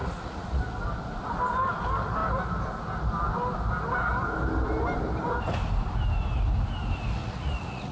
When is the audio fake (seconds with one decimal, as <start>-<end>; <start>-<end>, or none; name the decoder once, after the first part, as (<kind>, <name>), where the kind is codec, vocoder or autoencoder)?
0.0-0.6 (vocoder, Vocos); 7.2-7.9